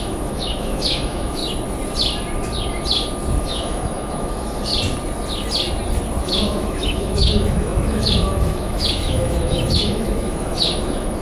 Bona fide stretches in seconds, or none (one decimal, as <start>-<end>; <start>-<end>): 1.4-3.4; 4.7-6.2